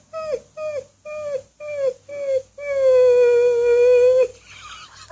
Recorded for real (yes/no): yes